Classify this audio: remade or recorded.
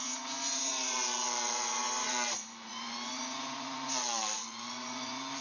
remade